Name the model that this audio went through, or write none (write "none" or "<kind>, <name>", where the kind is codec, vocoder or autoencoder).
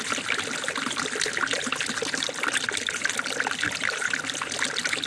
none